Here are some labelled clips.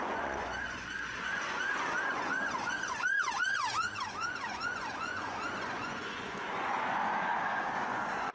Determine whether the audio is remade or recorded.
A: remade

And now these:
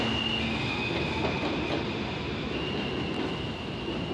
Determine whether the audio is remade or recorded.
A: recorded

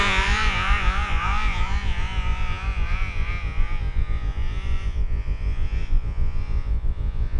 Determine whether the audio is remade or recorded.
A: remade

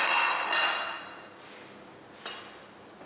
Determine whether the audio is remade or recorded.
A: recorded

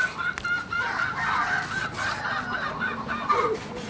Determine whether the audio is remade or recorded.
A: recorded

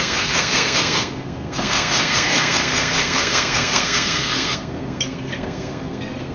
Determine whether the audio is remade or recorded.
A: remade